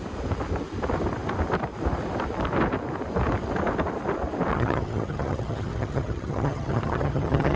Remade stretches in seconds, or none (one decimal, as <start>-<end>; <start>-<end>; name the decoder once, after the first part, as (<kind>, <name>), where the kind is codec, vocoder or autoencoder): 4.5-7.6 (vocoder, HiFi-GAN)